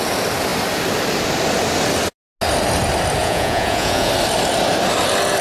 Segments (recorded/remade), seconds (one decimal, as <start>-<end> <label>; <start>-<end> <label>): 0.0-3.2 recorded; 3.2-4.1 remade; 4.1-5.4 recorded